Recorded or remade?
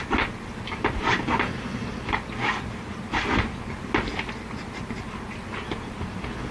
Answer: recorded